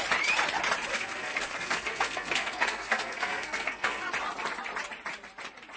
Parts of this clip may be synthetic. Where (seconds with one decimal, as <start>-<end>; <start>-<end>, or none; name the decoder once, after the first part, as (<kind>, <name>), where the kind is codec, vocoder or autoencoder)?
0.9-4.1 (codec, SNAC)